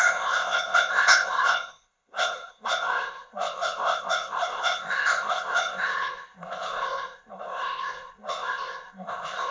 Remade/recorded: remade